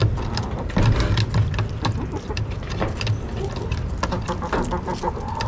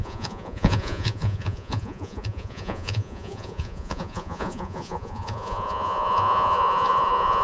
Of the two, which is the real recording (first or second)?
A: first